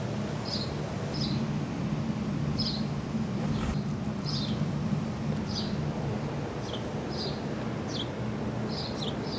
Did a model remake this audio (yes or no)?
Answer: no